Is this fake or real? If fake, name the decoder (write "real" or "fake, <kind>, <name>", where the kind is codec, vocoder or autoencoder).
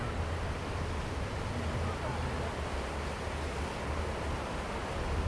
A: real